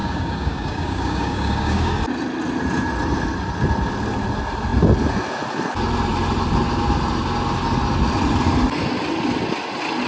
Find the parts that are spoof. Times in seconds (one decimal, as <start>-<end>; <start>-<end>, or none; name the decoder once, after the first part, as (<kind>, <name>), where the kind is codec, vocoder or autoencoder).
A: 0.0-2.0 (codec, DAC)